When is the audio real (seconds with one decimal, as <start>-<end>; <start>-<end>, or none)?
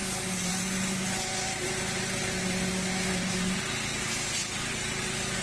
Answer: 0.0-5.4